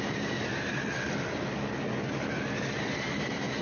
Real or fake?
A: real